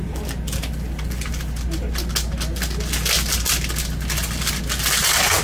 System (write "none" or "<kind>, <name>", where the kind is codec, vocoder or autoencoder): none